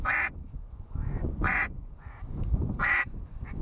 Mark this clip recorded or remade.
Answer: remade